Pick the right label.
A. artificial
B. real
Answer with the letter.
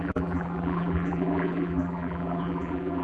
A